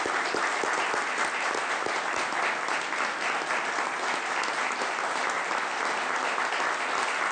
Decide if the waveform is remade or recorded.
recorded